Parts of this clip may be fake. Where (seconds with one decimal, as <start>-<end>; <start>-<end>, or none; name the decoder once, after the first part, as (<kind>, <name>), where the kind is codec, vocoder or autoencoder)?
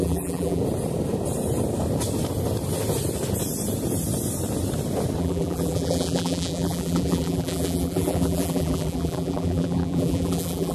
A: 0.0-0.6 (vocoder, BigVGAN v2); 5.2-10.7